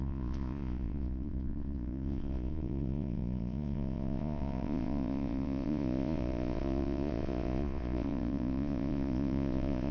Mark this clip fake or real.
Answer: fake